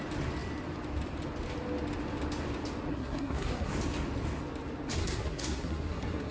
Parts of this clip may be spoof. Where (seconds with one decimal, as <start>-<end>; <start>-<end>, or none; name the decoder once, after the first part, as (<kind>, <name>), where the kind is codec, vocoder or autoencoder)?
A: 2.9-3.7 (codec, SNAC); 5.0-6.3